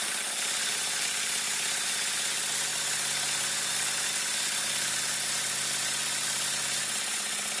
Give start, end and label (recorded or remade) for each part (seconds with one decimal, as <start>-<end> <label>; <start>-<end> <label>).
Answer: 0.0-7.6 recorded